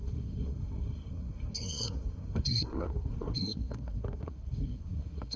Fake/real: fake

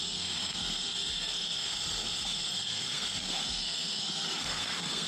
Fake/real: fake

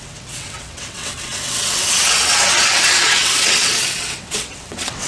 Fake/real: fake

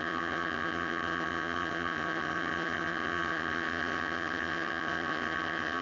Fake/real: fake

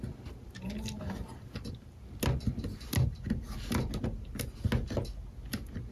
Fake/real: real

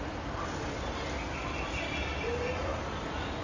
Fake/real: real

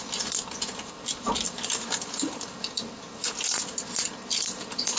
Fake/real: real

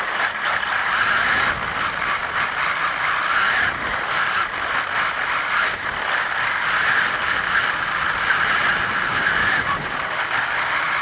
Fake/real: real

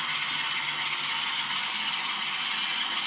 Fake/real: real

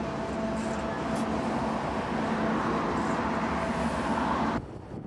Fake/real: real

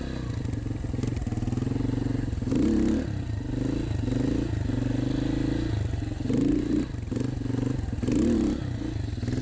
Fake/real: real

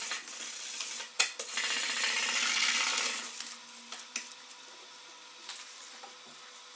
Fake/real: real